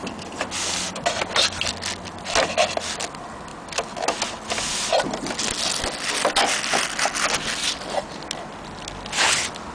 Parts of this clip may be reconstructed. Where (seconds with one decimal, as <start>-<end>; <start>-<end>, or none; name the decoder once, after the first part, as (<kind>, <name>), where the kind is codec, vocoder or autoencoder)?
none